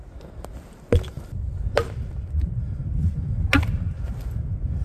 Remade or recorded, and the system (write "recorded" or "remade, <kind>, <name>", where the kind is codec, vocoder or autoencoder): recorded